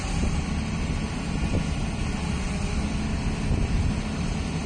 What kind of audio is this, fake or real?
real